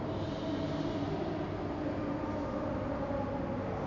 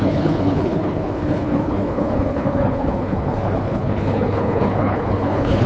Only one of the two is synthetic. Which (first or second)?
second